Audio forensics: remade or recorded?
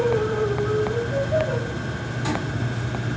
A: recorded